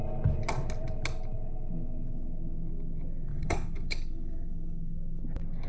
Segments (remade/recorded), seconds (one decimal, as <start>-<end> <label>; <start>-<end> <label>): 0.0-3.3 recorded; 3.3-5.2 remade; 5.2-5.7 recorded